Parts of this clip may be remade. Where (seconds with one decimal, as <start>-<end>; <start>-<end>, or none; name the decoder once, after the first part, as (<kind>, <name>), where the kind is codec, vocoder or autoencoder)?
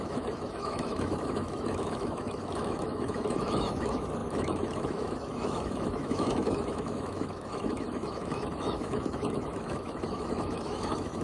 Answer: 0.0-11.2 (autoencoder, DAC-VAE)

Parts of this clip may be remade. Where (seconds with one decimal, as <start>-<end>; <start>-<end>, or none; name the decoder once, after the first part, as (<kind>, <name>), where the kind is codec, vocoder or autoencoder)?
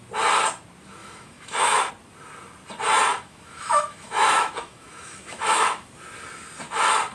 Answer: 1.0-1.9 (autoencoder, DAC-VAE); 3.1-5.9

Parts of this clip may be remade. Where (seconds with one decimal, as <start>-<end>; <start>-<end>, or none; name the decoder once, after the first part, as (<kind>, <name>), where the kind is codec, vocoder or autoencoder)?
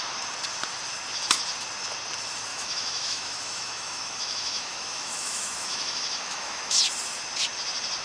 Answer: 2.5-6.8 (autoencoder, DAC-VAE)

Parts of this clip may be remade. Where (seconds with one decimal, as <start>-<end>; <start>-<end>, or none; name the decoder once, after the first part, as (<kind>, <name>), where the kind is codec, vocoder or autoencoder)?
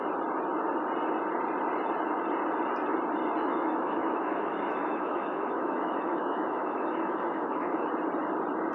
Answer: 3.4-7.9 (autoencoder, DAC-VAE)